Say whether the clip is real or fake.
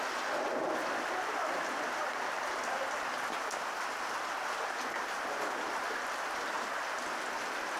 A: real